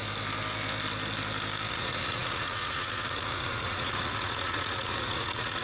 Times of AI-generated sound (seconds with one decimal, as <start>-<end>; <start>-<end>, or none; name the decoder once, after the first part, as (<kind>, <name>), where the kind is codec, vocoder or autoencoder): 1.7-5.6 (vocoder, Vocos)